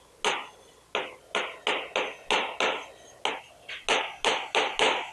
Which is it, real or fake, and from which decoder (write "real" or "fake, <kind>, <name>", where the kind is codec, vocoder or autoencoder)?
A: real